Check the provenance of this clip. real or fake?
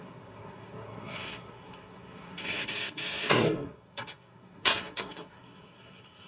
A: fake